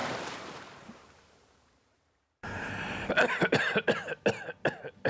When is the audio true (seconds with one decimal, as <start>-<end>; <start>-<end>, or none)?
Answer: 3.1-5.1